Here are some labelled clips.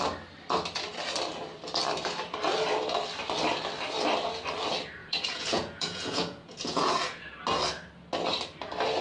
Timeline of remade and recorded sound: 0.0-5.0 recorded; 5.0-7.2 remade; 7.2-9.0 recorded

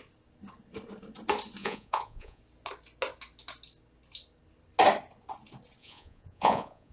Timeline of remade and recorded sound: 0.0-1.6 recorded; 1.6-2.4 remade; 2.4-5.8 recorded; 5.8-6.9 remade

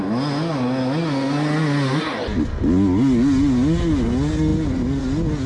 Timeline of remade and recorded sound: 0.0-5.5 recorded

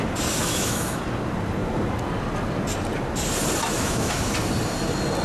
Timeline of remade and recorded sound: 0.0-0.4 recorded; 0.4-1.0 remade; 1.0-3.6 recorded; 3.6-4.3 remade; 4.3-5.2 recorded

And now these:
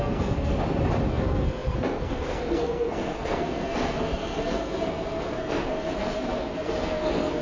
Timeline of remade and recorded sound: 0.0-0.5 remade; 0.5-1.1 recorded; 1.1-7.4 remade

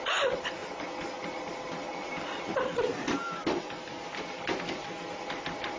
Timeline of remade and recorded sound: 0.0-5.8 recorded